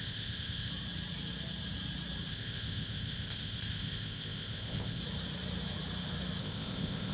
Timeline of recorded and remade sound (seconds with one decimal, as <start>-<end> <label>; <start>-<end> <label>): 0.0-0.7 remade; 0.7-2.3 recorded; 2.3-5.0 remade; 5.0-6.4 recorded; 6.4-7.1 remade

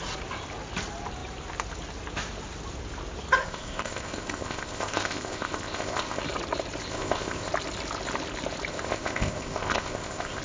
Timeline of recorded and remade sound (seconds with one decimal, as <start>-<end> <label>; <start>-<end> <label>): 0.0-3.4 recorded; 3.4-6.2 remade; 6.2-6.9 recorded; 6.9-7.5 remade; 7.5-8.7 recorded; 8.7-10.4 remade

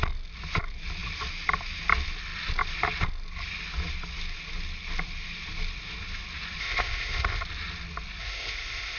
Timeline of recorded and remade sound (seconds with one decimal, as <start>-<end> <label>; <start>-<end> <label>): 0.0-6.6 recorded; 6.6-7.4 remade; 7.4-8.2 recorded; 8.2-9.0 remade